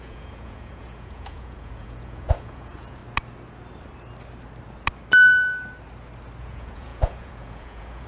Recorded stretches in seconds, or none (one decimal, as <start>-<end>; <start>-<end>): 3.0-6.4